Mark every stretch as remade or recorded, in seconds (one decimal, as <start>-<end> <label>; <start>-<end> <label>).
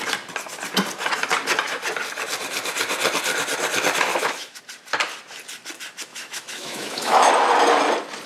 0.0-4.1 recorded; 4.1-4.6 remade; 4.6-6.1 recorded; 6.1-7.3 remade; 7.3-8.3 recorded